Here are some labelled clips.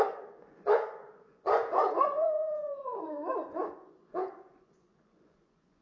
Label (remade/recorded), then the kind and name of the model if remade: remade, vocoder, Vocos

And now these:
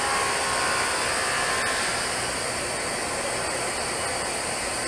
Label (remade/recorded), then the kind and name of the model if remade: recorded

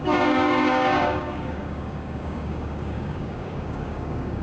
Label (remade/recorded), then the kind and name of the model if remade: remade, codec, DAC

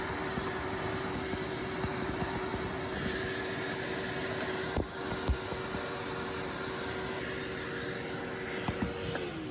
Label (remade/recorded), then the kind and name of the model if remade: recorded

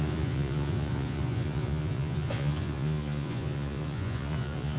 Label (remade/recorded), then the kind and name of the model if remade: remade, vocoder, Vocos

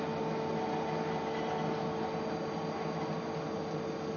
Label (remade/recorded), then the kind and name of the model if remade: recorded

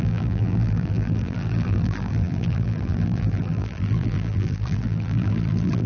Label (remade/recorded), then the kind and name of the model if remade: remade, vocoder, BigVGAN v2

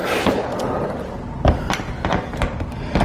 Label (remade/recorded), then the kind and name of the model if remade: recorded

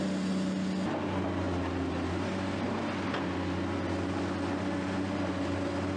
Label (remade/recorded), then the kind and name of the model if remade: recorded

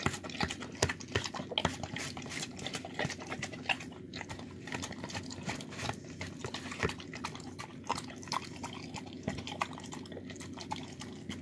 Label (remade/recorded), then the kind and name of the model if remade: recorded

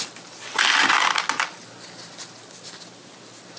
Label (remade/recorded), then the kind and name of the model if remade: recorded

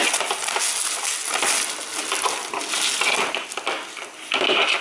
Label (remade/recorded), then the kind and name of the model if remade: recorded